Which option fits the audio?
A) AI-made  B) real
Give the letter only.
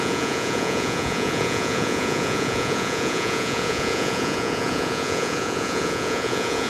A